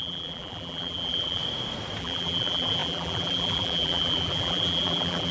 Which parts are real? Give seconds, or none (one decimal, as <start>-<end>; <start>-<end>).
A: 1.4-2.0